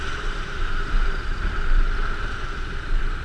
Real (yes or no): no